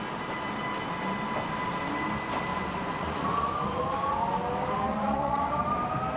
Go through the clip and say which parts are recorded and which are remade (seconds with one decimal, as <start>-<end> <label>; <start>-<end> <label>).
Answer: 0.0-2.5 recorded; 2.5-3.8 remade; 3.8-4.9 recorded; 4.9-5.5 remade; 5.5-6.2 recorded